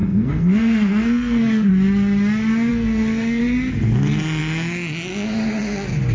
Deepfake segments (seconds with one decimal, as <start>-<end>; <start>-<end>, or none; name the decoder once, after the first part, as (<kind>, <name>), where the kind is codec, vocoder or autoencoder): 0.0-1.7 (codec, SNAC); 2.7-3.4